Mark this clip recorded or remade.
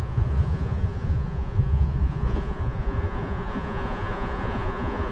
remade